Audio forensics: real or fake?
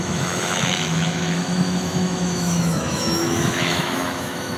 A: fake